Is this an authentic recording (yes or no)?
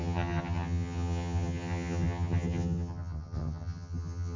no